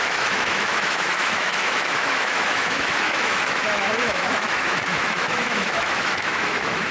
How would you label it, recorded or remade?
remade